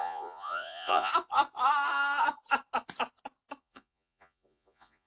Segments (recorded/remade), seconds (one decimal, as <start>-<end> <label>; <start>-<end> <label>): 0.0-1.1 remade; 1.1-3.6 recorded; 3.6-5.1 remade